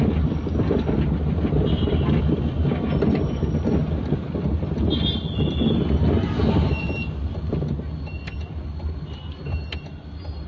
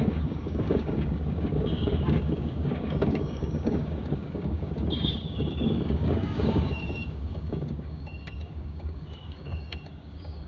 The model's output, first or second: second